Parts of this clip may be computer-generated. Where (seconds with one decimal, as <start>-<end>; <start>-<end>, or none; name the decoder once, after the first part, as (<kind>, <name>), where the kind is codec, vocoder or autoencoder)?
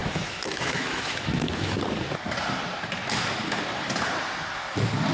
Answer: 0.0-1.8 (autoencoder, DAC-VAE)